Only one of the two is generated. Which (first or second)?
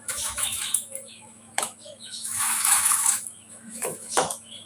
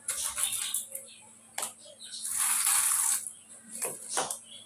first